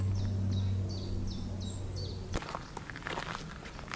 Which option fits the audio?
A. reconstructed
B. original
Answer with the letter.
B